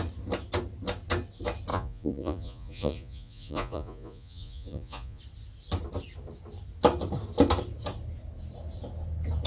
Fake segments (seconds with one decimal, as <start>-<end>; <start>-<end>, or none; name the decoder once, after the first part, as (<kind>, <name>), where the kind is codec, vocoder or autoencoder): 1.7-5.2 (vocoder, Vocos)